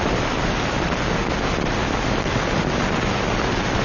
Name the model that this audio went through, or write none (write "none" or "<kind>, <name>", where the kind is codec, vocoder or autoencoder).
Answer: none